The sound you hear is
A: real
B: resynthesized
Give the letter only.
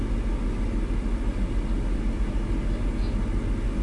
A